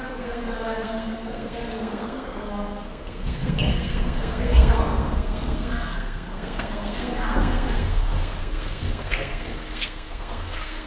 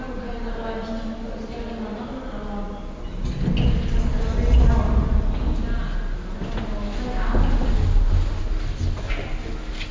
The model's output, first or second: first